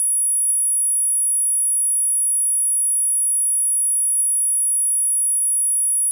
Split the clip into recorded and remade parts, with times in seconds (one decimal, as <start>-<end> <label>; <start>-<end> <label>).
0.0-6.1 recorded